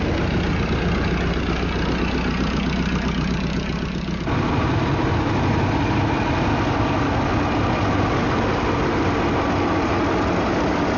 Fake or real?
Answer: real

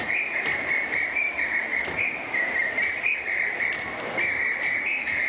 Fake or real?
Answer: fake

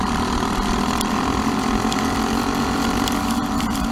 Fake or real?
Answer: fake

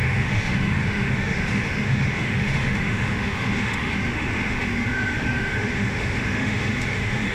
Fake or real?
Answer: fake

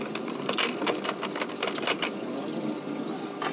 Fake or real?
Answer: real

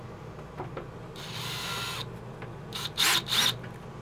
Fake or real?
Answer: real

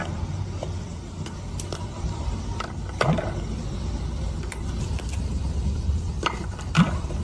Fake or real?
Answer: fake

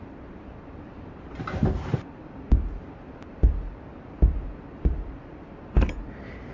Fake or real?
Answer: fake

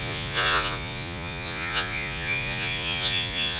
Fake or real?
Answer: fake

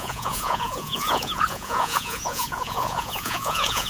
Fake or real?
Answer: fake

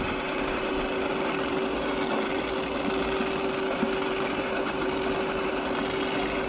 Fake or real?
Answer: real